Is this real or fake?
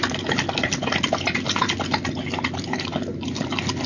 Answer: real